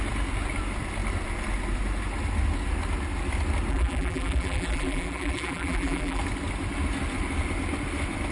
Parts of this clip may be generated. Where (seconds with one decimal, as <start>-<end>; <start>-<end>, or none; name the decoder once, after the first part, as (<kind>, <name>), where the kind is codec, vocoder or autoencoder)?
3.7-6.2 (vocoder, BigVGAN v2)